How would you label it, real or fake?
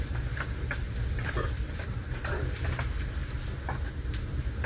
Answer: real